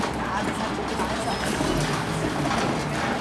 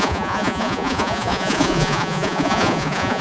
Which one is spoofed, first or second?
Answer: second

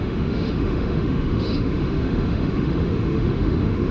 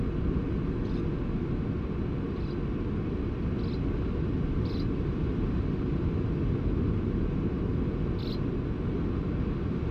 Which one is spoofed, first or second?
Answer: first